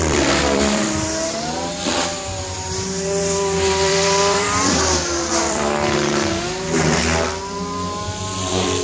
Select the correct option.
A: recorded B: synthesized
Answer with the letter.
B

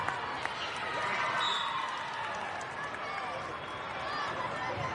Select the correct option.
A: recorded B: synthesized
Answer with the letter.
A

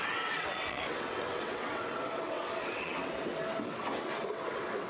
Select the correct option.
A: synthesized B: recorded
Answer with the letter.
A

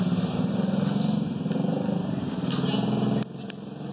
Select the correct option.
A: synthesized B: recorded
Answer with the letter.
B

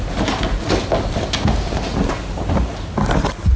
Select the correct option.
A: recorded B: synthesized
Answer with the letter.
A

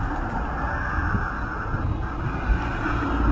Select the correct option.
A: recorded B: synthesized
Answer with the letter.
A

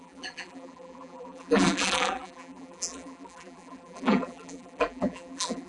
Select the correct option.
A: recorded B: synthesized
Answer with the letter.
B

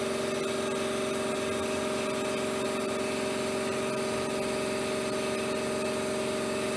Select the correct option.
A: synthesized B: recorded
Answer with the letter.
B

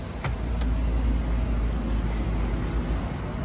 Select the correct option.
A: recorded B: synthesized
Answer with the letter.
A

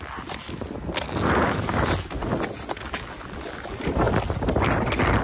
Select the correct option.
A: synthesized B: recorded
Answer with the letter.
B